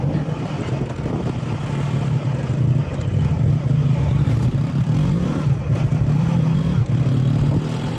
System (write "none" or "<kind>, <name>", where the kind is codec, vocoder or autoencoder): none